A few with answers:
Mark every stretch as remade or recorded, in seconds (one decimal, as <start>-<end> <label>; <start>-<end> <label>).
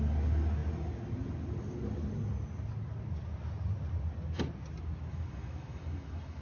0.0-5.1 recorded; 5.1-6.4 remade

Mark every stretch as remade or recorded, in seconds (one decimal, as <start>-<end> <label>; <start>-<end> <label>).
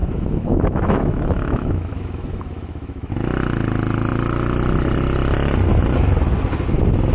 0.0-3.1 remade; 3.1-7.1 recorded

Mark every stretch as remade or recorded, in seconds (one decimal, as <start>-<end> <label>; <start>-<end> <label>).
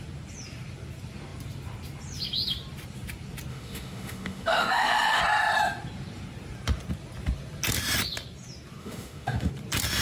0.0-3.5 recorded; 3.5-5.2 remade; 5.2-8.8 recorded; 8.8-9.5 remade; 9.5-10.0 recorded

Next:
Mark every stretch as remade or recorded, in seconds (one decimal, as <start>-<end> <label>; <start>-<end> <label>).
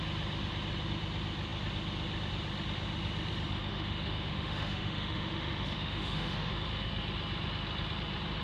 0.0-3.7 recorded; 3.7-6.5 remade; 6.5-8.4 recorded